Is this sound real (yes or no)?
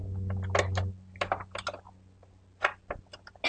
yes